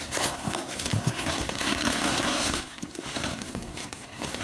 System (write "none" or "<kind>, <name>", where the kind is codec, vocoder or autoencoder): codec, SNAC